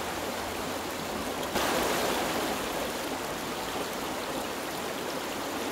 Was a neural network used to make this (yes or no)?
no